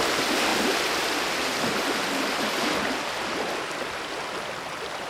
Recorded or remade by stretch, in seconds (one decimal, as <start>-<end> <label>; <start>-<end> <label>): 0.0-5.1 recorded